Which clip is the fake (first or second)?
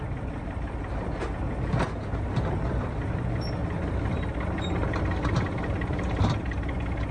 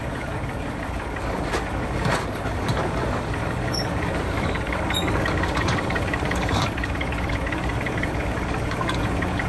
second